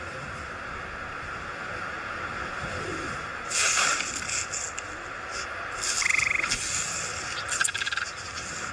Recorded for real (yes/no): yes